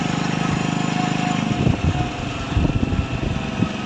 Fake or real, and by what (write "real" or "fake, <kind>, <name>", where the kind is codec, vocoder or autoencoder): real